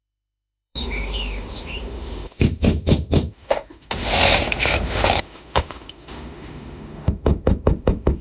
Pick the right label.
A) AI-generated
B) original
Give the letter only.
A